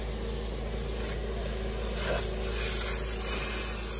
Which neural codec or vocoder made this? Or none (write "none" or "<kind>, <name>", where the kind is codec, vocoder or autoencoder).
none